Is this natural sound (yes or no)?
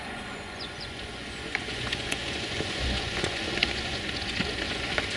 no